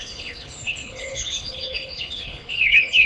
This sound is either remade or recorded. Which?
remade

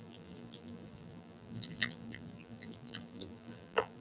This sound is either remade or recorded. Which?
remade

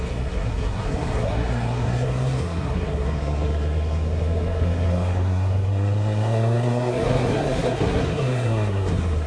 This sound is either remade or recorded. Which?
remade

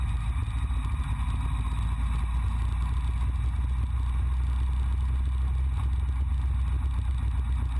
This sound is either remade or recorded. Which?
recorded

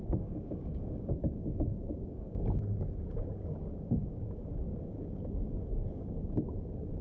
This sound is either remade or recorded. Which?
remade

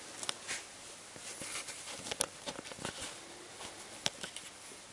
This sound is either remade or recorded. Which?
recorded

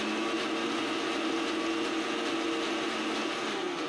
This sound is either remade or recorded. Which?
recorded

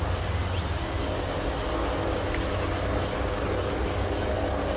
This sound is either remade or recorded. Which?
recorded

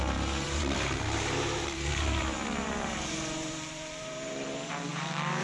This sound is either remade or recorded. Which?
remade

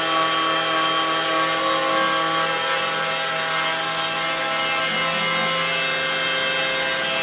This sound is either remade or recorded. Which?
recorded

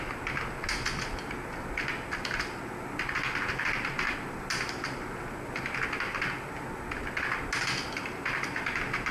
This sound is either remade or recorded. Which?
recorded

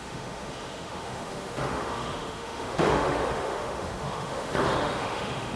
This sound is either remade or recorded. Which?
remade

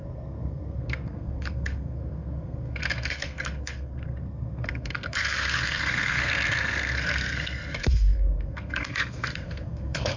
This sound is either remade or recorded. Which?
remade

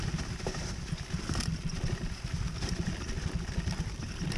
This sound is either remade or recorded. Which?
remade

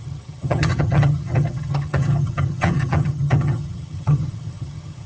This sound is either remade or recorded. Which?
remade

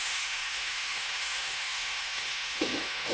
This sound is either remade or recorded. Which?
remade